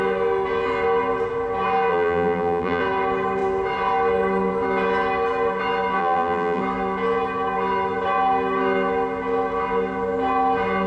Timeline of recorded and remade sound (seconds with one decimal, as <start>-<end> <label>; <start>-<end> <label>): 0.0-1.9 recorded; 1.9-2.8 remade; 2.8-6.0 recorded; 6.0-6.6 remade; 6.6-10.9 recorded